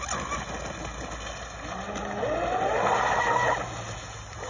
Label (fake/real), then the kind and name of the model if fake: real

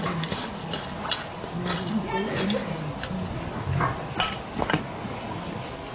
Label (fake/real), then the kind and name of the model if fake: real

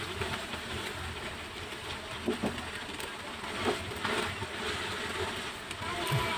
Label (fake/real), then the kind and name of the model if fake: real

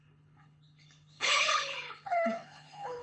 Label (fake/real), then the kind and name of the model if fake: fake, codec, HILCodec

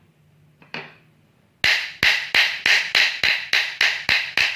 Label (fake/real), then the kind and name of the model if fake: real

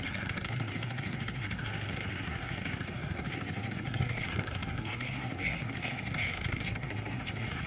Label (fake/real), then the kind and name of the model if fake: fake, codec, SNAC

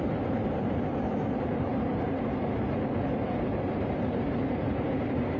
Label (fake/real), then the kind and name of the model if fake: fake, vocoder, BigVGAN v2